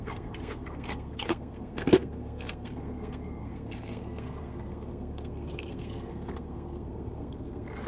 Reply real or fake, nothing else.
fake